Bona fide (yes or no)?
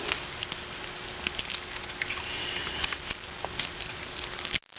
yes